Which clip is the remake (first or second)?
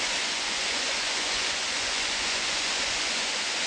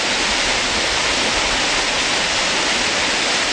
first